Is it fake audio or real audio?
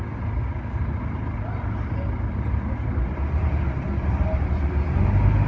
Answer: real